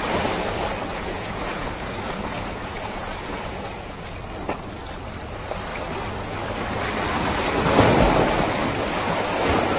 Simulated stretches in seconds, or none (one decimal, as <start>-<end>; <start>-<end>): 0.9-4.2

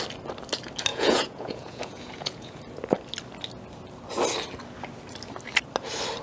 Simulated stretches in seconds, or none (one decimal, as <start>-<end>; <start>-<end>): 0.9-2.6

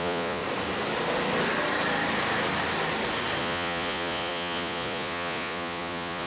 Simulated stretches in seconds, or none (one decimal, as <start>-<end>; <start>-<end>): 0.0-0.4; 3.4-6.3

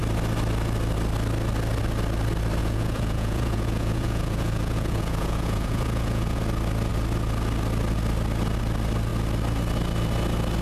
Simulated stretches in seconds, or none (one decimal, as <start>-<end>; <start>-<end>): 2.6-6.4

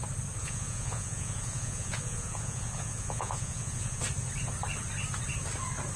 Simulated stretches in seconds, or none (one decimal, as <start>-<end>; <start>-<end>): 0.4-4.0